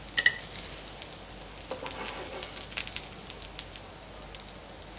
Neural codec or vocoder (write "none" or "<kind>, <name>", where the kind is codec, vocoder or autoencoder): none